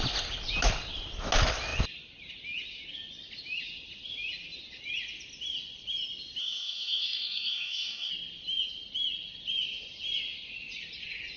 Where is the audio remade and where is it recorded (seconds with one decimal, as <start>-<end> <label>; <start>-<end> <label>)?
0.0-6.4 recorded; 6.4-8.1 remade; 8.1-11.4 recorded